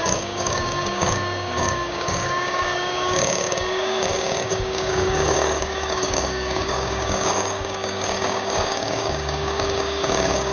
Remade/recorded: remade